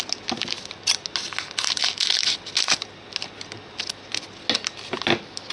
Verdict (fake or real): real